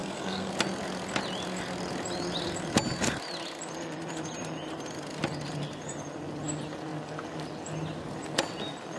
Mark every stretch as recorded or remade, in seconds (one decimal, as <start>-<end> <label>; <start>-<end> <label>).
0.0-0.5 remade; 0.5-9.0 recorded